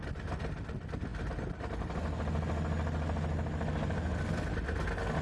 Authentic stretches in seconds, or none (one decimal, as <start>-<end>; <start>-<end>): 0.0-5.2